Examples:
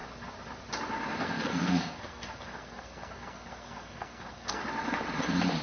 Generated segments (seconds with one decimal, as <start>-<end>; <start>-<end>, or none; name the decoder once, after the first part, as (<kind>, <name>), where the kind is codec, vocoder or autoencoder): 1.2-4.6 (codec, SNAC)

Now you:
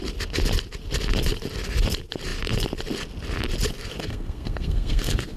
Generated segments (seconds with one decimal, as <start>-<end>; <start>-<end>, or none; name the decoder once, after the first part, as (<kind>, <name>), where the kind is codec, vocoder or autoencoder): 4.0-5.4 (codec, SNAC)

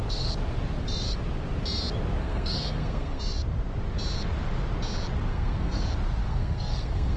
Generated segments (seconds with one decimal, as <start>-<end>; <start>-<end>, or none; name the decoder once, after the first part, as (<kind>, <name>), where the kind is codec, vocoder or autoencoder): 2.2-3.2 (codec, SNAC); 5.3-5.8; 6.2-7.2